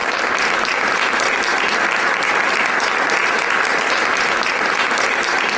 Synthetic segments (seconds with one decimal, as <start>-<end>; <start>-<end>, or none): none